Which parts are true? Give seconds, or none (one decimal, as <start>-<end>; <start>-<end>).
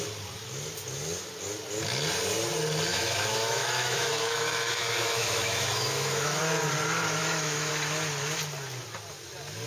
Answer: 0.0-2.9; 6.4-7.2; 7.7-9.7